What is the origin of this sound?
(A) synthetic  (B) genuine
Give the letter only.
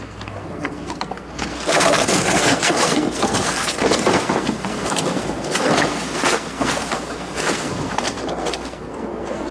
A